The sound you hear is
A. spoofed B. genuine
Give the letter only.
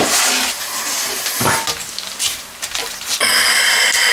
B